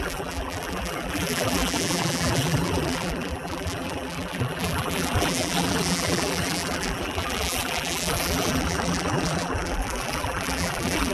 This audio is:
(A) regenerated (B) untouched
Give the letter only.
A